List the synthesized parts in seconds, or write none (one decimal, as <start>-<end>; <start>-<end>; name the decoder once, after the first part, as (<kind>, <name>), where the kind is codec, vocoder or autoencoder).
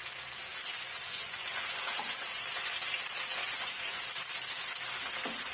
0.5-2.7 (vocoder, Vocos); 3.4-4.0